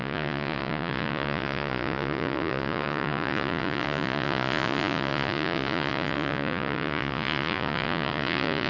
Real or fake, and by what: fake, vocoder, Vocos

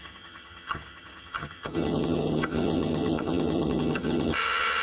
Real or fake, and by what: fake, vocoder, HiFi-GAN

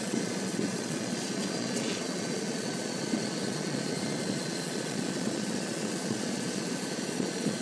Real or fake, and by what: fake, vocoder, Vocos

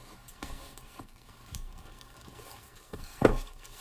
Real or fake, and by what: fake, codec, SNAC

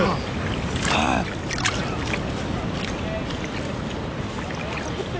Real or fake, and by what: real